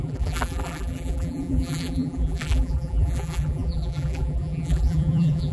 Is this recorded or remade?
remade